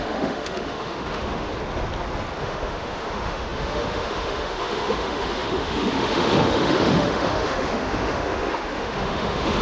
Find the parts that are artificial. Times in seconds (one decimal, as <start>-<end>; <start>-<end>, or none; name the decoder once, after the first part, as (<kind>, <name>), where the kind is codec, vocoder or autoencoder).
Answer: 0.0-1.5 (autoencoder, DAC-VAE); 2.4-9.6